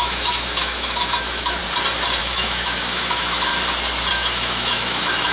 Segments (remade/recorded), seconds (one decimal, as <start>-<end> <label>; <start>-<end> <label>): 0.0-1.6 remade; 1.6-2.2 recorded; 2.2-3.5 remade; 3.5-4.1 recorded; 4.1-5.3 remade